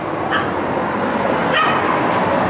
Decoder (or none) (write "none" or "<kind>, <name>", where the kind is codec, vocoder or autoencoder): none